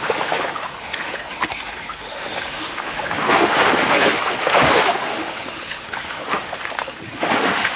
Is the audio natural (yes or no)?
no